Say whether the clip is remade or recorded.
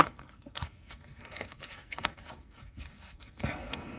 remade